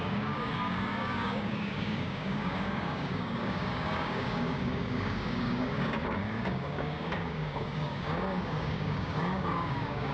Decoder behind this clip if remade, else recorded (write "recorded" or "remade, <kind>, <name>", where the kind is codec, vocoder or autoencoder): remade, codec, DAC